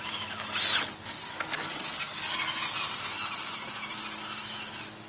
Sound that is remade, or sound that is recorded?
recorded